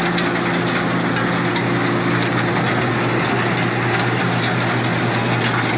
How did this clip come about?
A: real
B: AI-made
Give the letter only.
A